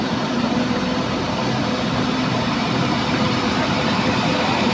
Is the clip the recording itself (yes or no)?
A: no